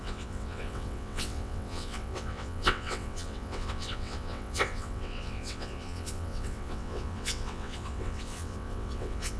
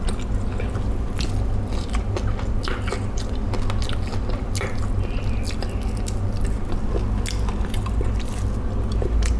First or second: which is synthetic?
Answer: first